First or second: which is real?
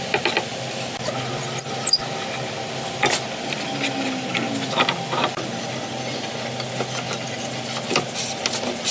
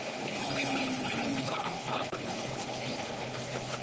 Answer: first